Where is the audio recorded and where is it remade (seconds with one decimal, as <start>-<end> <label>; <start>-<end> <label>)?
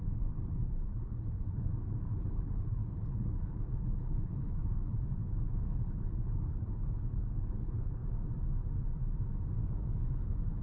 0.0-8.0 remade; 8.0-9.6 recorded; 9.6-10.6 remade